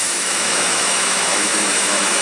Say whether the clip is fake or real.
fake